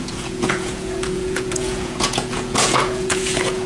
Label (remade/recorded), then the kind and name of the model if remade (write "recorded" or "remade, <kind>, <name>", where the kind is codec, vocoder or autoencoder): remade, vocoder, Vocos